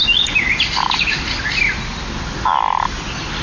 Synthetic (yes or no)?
no